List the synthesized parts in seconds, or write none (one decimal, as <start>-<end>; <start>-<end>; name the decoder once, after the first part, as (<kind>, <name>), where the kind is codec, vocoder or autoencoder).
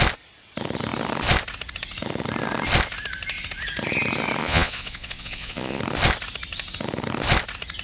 4.4-5.8 (vocoder, Vocos)